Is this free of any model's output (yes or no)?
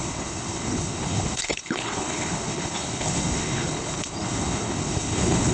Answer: no